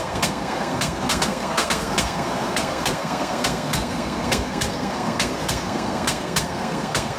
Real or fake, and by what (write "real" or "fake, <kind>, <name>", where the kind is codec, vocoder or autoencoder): fake, codec, SNAC